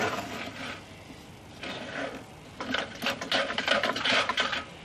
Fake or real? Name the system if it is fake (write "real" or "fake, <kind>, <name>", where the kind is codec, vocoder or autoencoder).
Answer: real